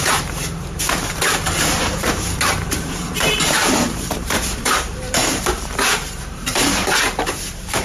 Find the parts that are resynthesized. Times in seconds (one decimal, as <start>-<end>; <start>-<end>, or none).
0.0-7.8